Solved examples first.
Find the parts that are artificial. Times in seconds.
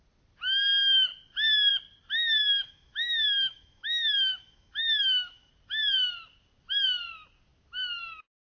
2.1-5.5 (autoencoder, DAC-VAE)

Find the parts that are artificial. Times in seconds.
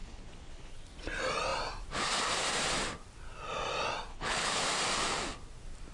0.0-0.7 (codec, HILCodec); 4.1-4.6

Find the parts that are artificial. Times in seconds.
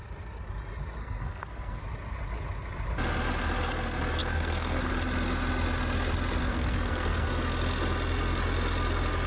1.0-1.8 (codec, SNAC); 4.2-4.9; 6.4-7.3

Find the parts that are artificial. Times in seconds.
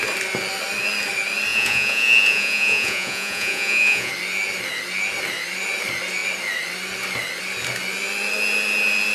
1.5-4.1 (vocoder, Vocos)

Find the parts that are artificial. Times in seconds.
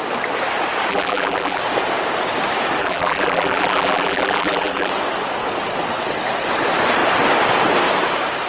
0.9-1.6 (vocoder, BigVGAN v2); 2.8-4.9